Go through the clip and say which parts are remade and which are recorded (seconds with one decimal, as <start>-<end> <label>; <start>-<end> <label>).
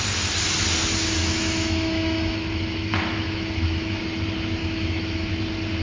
0.0-1.2 recorded; 1.2-4.0 remade; 4.0-4.6 recorded; 4.6-5.3 remade; 5.3-5.8 recorded